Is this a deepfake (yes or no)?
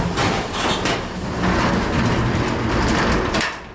no